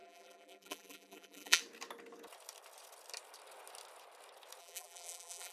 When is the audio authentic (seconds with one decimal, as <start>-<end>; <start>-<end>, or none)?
1.6-4.6